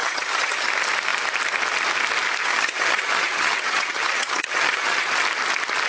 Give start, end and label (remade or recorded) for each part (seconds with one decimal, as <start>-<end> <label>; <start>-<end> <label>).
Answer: 0.0-0.7 remade; 0.7-2.4 recorded; 2.4-5.1 remade; 5.1-5.9 recorded